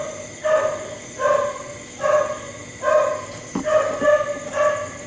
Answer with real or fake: real